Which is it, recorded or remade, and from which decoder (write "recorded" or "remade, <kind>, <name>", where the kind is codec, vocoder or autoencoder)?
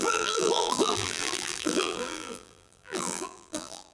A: remade, vocoder, BigVGAN v2